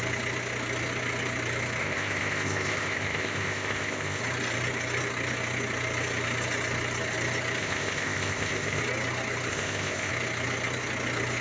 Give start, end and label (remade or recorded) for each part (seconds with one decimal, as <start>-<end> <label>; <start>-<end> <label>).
0.0-1.8 recorded; 1.8-4.2 remade; 4.2-7.6 recorded; 7.6-8.8 remade; 8.8-9.5 recorded; 9.5-10.1 remade; 10.1-11.4 recorded